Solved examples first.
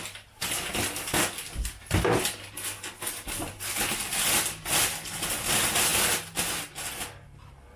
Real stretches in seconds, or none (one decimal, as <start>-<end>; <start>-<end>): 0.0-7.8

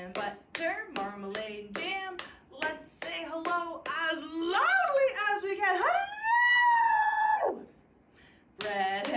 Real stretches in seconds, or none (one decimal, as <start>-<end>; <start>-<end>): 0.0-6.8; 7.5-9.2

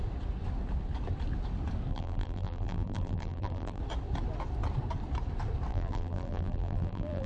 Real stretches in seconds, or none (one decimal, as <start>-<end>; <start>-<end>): 0.0-1.9; 3.8-5.7

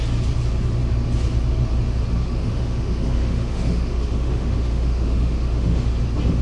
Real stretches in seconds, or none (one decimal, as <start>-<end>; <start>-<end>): 0.0-2.2; 6.0-6.4